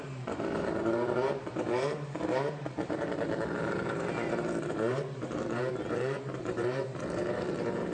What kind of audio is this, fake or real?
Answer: fake